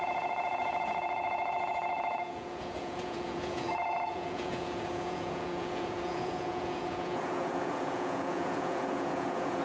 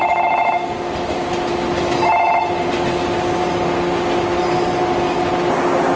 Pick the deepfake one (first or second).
first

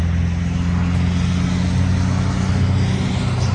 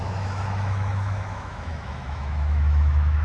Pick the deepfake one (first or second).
second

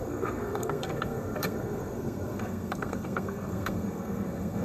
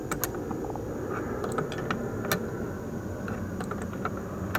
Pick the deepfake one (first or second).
first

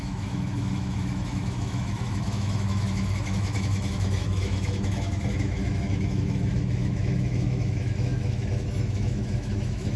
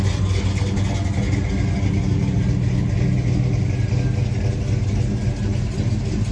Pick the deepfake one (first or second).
first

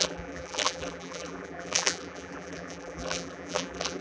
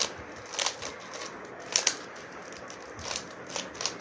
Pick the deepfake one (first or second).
first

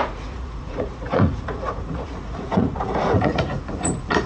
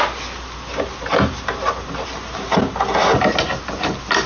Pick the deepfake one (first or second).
first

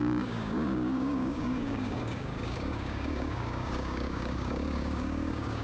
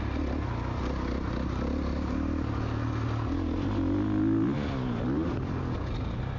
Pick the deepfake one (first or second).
first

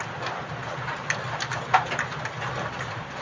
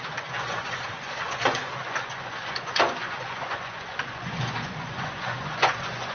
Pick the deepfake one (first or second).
second